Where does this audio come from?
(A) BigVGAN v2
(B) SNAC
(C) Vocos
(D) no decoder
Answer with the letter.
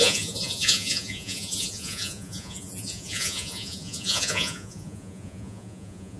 C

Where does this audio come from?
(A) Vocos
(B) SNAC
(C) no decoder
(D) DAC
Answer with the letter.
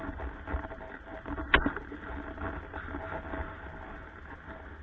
C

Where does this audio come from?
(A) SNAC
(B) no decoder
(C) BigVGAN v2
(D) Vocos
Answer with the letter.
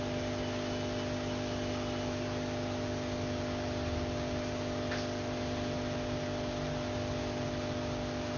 B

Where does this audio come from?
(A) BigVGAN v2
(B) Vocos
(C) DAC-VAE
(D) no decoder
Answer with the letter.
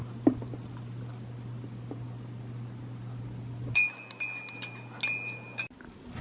D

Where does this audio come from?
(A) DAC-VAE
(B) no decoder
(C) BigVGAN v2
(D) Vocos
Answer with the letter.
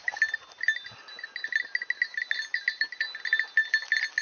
B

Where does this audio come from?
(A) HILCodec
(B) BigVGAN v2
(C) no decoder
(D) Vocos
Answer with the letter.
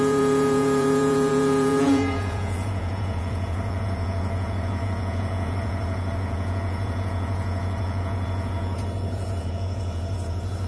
D